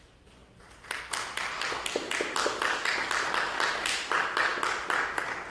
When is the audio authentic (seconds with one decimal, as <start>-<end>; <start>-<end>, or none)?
0.0-5.5